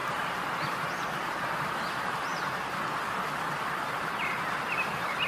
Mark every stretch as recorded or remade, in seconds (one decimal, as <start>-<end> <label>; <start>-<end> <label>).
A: 0.0-5.3 recorded